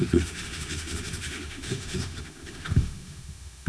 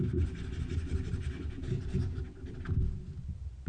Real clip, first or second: second